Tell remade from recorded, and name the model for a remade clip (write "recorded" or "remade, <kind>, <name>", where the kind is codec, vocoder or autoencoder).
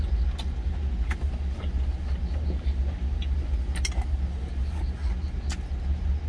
recorded